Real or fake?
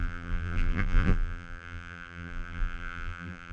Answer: fake